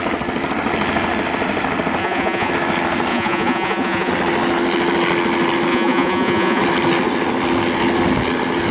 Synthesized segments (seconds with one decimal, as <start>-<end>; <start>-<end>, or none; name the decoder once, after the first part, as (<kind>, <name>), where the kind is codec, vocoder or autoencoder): 2.0-2.5 (vocoder, Vocos); 3.1-4.1; 5.7-6.6